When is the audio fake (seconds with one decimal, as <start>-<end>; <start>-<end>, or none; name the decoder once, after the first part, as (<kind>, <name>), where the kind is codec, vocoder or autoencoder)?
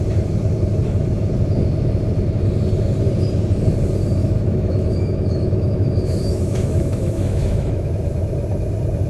4.2-7.9 (autoencoder, DAC-VAE)